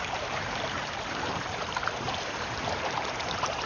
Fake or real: fake